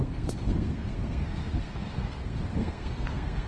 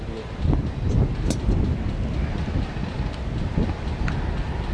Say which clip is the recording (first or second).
second